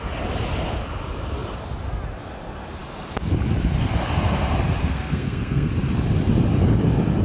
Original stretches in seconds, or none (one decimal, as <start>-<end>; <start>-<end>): 0.0-4.8; 5.7-7.2